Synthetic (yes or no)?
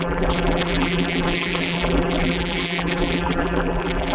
yes